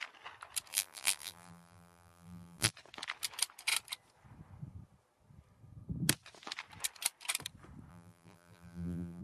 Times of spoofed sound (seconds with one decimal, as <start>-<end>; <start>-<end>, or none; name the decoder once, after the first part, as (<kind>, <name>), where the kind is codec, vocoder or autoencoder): 0.7-2.7 (vocoder, BigVGAN v2); 7.9-9.2